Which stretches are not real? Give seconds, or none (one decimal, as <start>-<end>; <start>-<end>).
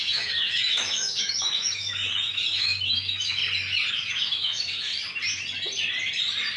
0.0-3.4; 3.9-4.9